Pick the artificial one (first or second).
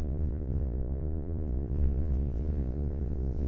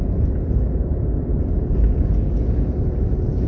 first